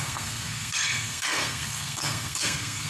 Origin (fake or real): fake